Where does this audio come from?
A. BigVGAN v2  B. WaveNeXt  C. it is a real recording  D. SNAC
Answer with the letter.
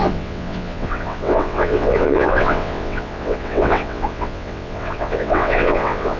B